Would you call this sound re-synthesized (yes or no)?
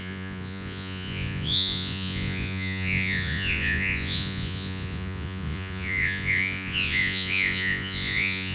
yes